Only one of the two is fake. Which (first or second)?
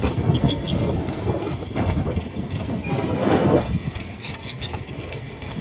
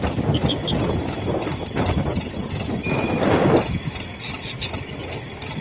first